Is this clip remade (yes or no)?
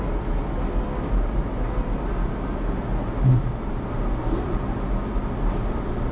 no